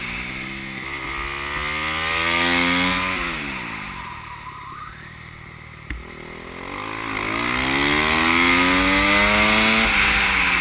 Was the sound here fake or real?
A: real